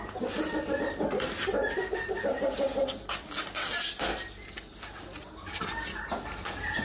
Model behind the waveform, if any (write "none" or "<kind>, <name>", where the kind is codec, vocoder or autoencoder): none